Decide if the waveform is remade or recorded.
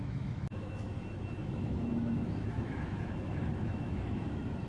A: remade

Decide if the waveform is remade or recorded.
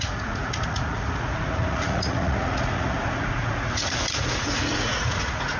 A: remade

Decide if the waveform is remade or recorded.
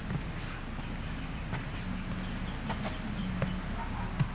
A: recorded